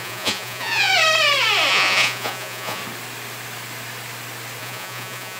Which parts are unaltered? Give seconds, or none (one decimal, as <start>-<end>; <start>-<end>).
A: 0.9-1.7; 2.8-4.6